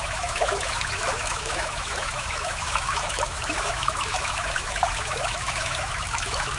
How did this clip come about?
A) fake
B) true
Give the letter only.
A